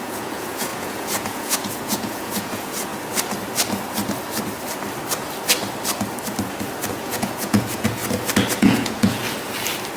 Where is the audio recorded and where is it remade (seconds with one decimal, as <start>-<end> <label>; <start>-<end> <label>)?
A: 0.0-2.9 remade; 2.9-6.9 recorded; 6.9-8.0 remade; 8.0-8.6 recorded; 8.6-9.2 remade; 9.2-10.0 recorded